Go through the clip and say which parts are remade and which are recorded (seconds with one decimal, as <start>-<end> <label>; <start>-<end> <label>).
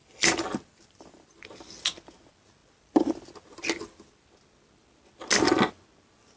0.0-1.4 remade; 1.4-2.6 recorded; 2.6-3.3 remade; 3.3-6.4 recorded